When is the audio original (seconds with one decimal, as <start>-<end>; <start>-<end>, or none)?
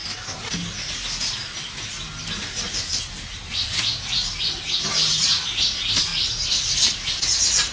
0.0-7.7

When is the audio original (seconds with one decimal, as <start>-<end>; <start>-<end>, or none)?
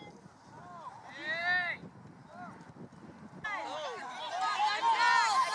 0.0-5.5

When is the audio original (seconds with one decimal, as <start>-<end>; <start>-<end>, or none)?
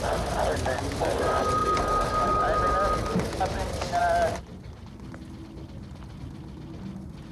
0.0-7.3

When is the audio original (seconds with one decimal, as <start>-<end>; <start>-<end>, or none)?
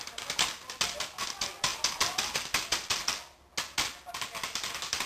0.0-5.1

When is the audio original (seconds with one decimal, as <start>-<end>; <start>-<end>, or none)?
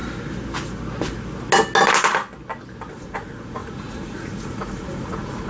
0.0-2.9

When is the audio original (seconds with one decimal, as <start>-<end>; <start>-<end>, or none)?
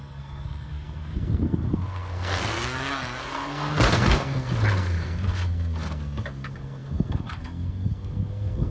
none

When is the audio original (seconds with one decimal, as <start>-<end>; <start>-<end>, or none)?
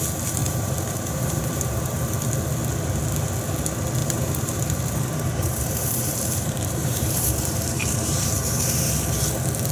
0.0-0.4; 2.0-4.0; 8.9-9.7